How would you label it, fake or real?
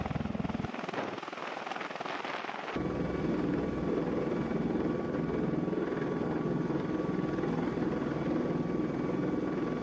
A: real